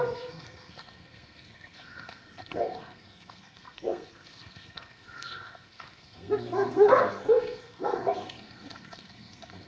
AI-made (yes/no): yes